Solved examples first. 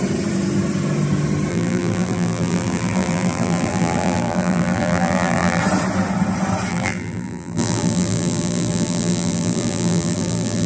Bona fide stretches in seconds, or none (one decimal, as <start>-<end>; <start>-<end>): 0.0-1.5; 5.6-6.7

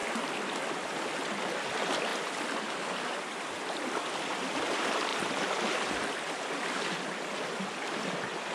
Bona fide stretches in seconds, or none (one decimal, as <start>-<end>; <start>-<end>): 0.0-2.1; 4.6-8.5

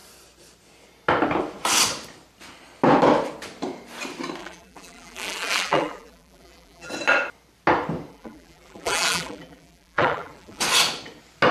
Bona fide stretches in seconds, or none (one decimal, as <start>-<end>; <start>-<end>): 0.0-4.4; 6.9-8.1; 10.6-11.5

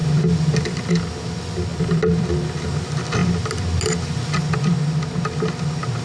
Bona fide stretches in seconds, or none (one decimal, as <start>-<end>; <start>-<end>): 0.0-1.7; 2.3-6.0

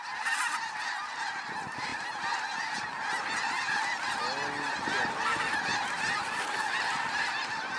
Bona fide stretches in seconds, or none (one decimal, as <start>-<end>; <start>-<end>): 1.9-5.1

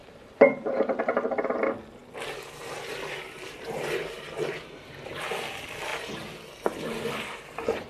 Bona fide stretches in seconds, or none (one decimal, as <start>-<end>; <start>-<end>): 1.0-7.9

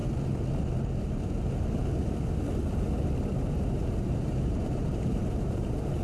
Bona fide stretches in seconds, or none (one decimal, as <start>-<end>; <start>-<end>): 0.0-3.3